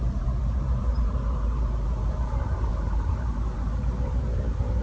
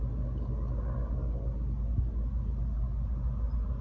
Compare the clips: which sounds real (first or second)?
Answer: second